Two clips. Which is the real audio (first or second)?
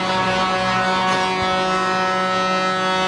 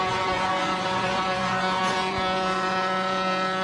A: first